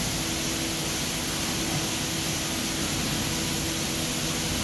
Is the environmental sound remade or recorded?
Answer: recorded